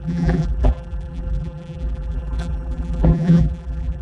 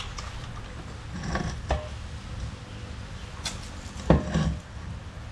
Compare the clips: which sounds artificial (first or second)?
first